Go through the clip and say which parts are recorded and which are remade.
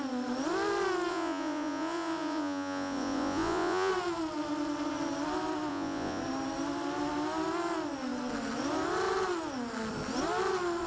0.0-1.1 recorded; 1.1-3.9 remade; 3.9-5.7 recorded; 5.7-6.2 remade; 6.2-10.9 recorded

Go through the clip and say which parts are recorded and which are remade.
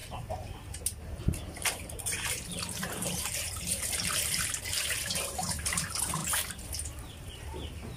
0.0-6.2 remade; 6.2-7.0 recorded; 7.0-8.0 remade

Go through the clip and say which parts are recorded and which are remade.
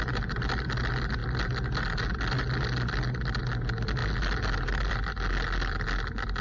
0.0-6.4 recorded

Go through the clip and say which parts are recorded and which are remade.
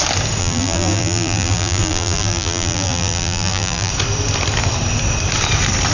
0.0-0.4 recorded; 0.4-3.9 remade; 3.9-5.9 recorded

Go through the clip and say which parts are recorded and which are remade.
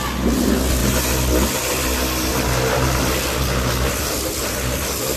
0.0-5.2 recorded